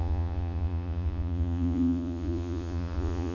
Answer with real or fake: fake